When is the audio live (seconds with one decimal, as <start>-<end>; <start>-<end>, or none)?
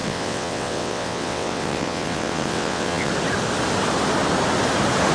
3.1-5.1